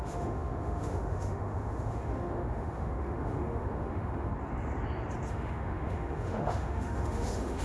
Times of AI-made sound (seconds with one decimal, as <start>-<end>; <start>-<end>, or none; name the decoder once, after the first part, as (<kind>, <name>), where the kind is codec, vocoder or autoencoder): 0.0-4.3 (autoencoder, DAC-VAE); 5.3-7.6